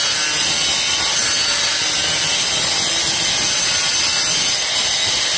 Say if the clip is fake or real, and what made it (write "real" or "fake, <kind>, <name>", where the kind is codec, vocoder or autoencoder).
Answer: real